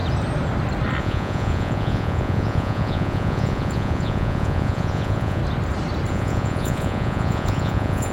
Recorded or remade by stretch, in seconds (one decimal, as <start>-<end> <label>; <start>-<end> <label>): 0.0-1.0 recorded; 1.0-5.4 remade; 5.4-6.1 recorded; 6.1-8.1 remade